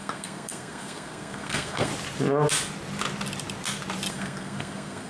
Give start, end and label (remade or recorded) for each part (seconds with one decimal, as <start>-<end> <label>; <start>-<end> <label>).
0.0-1.9 remade; 1.9-4.1 recorded; 4.1-5.1 remade